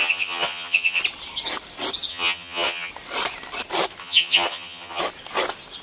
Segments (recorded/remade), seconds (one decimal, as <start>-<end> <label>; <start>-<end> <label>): 0.0-1.0 remade; 1.0-2.1 recorded; 2.1-2.9 remade; 2.9-4.0 recorded; 4.0-5.0 remade; 5.0-5.8 recorded